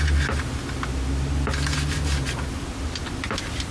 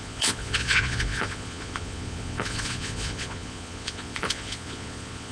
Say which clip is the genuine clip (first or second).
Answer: first